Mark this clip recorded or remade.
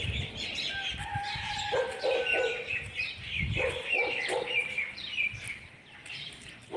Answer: recorded